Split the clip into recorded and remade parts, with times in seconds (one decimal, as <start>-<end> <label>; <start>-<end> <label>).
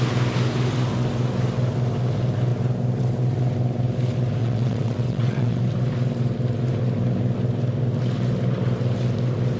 0.0-4.4 recorded; 4.4-5.6 remade; 5.6-9.6 recorded